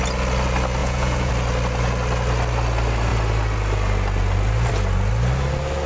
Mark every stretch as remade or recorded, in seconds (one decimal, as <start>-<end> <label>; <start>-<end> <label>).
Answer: 0.0-0.8 recorded; 0.8-1.3 remade; 1.3-5.9 recorded